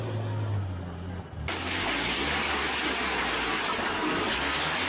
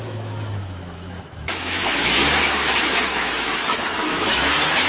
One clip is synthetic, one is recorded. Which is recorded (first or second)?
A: first